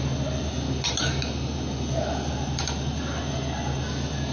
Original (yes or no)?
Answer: yes